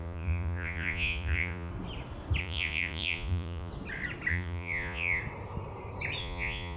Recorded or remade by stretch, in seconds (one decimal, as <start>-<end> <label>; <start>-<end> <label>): 0.0-1.7 remade; 1.7-2.4 recorded; 2.4-3.7 remade; 3.7-4.3 recorded; 4.3-5.2 remade; 5.2-6.2 recorded; 6.2-6.8 remade